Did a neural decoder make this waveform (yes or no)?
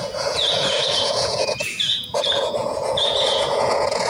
yes